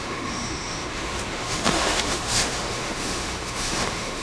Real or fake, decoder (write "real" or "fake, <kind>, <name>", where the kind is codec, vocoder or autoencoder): fake, autoencoder, DAC-VAE